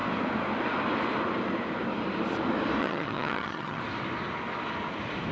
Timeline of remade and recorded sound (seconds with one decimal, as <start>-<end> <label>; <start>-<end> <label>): 0.0-2.8 recorded; 2.8-3.8 remade; 3.8-5.3 recorded